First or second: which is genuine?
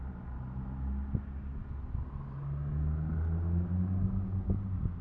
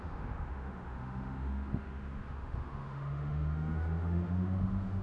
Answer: first